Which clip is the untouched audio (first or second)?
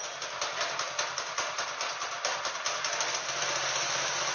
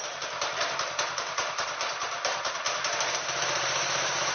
first